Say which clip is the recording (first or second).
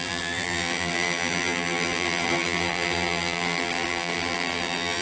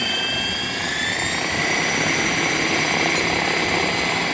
second